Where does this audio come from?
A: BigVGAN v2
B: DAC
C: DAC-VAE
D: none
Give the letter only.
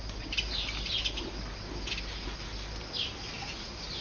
D